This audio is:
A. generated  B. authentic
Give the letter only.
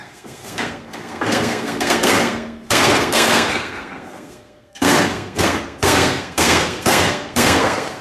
A